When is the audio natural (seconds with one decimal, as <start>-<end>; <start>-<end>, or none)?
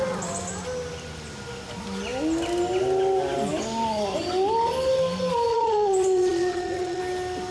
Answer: 0.0-5.5; 7.0-7.5